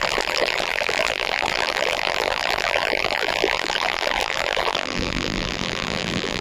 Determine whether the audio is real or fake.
fake